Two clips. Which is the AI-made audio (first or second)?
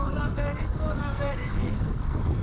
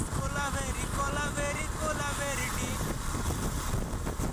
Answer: first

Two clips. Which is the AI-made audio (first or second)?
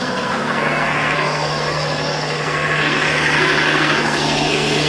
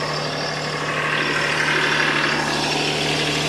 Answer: first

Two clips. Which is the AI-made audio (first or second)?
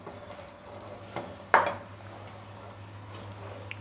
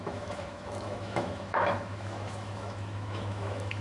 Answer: second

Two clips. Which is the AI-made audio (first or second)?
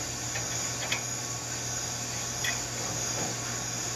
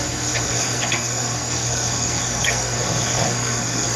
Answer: second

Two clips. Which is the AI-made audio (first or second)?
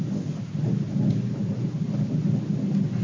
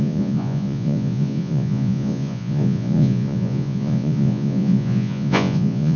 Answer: second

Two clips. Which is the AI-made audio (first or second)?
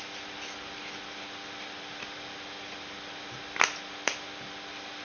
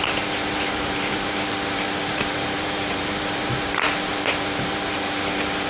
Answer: second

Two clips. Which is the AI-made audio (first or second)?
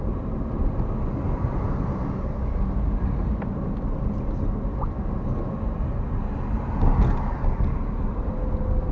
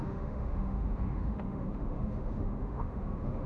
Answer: second